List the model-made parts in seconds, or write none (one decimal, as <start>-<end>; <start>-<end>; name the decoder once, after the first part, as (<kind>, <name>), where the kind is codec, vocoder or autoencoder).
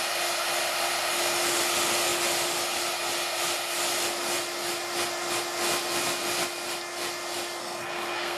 7.6-8.4 (codec, SNAC)